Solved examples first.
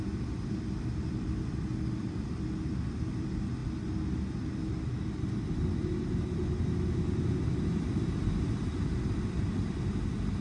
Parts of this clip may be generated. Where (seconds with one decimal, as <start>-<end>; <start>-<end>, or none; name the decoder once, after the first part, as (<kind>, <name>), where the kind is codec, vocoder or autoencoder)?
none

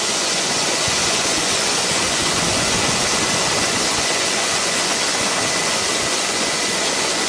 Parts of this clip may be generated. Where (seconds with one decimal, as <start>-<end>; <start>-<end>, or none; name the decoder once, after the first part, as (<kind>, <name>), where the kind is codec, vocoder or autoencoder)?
0.0-7.3 (vocoder, Vocos)

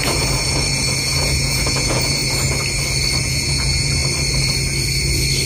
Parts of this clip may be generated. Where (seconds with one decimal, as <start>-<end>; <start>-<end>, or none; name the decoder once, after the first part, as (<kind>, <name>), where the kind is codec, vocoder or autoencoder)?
0.0-2.2 (vocoder, Vocos); 3.2-4.0